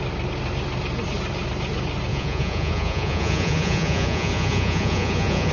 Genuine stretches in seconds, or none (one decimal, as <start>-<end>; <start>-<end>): 0.0-2.1